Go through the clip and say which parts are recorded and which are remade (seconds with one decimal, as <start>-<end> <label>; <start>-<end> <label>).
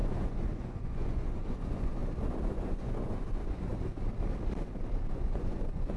0.0-2.0 remade; 2.0-2.5 recorded; 2.5-3.7 remade; 3.7-5.1 recorded; 5.1-6.0 remade